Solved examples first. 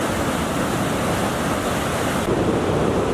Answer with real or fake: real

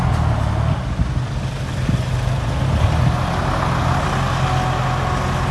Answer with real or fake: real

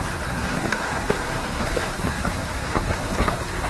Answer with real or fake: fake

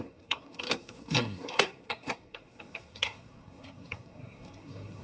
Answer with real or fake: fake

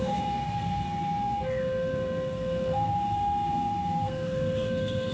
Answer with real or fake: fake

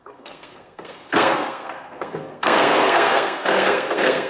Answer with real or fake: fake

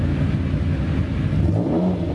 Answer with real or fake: real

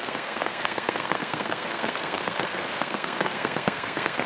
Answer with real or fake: fake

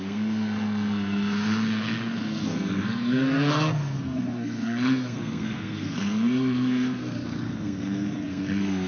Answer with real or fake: fake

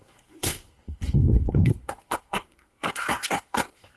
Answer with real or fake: fake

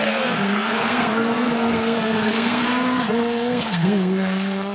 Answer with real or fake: fake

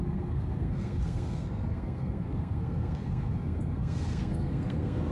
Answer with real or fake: fake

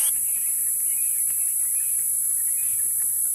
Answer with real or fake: real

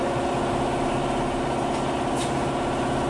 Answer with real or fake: real